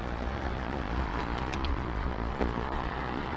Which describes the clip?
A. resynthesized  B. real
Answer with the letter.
A